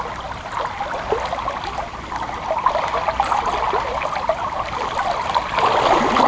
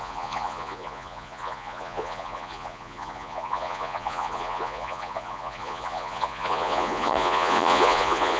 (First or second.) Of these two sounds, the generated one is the second